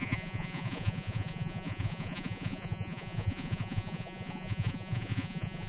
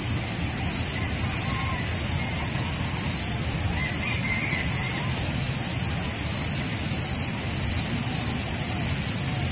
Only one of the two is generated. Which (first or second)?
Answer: first